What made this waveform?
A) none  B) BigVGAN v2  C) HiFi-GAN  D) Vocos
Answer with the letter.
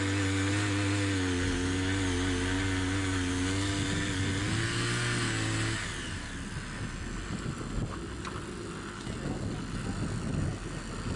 A